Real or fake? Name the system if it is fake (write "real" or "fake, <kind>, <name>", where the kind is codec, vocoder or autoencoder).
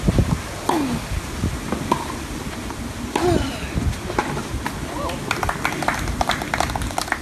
real